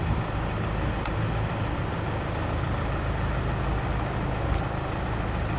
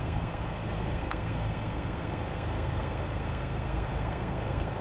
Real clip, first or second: first